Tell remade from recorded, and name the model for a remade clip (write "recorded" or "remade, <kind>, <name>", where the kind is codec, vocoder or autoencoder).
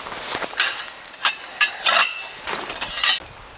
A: recorded